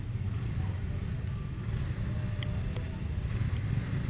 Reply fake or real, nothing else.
real